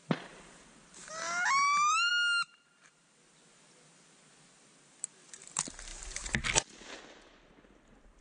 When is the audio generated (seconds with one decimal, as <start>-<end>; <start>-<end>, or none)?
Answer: 0.0-2.1